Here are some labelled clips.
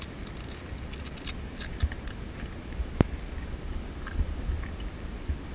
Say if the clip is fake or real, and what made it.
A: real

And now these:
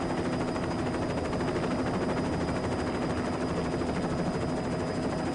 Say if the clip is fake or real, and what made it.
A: real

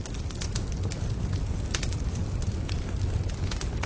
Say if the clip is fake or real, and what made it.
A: real